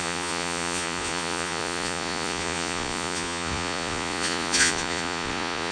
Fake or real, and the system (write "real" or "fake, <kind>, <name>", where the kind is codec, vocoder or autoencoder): fake, vocoder, Vocos